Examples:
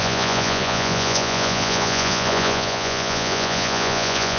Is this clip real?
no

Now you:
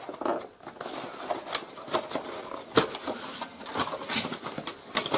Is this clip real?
yes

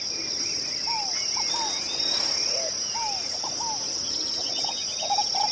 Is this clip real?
yes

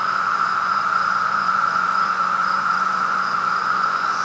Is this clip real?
no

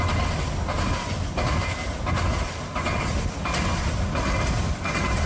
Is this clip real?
yes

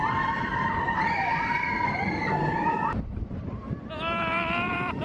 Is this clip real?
no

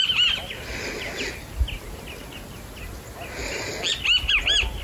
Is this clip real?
yes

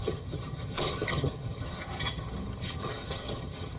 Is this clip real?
no